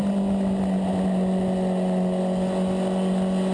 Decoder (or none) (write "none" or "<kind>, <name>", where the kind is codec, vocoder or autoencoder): none